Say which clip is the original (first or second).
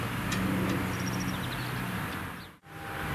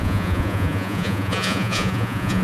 first